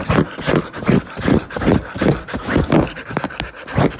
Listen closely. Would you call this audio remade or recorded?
recorded